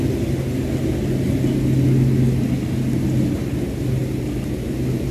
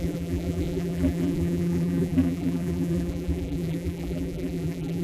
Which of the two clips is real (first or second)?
first